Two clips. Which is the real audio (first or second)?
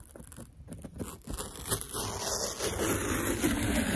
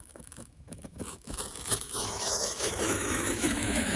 first